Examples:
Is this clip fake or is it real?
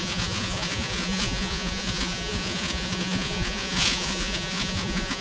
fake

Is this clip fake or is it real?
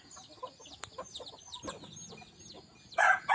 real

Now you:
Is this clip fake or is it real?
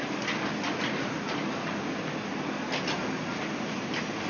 real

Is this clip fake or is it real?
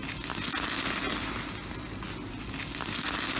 real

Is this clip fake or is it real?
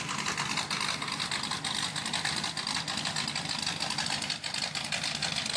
real